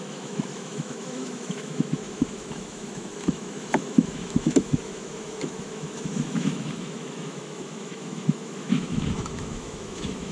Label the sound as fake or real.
fake